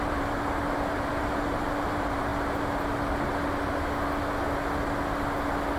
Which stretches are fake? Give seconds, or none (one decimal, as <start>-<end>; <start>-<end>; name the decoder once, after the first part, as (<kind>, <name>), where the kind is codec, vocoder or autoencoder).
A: 0.0-2.3 (vocoder, BigVGAN v2)